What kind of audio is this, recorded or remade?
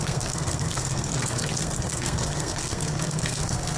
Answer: remade